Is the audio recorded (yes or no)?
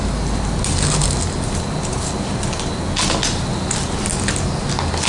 yes